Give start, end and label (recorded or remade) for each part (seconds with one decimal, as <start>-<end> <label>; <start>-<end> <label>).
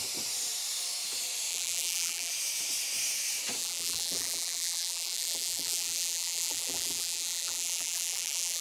0.0-1.5 recorded; 1.5-2.3 remade; 2.3-3.6 recorded; 3.6-8.6 remade